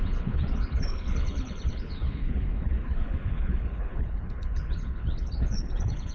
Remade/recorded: remade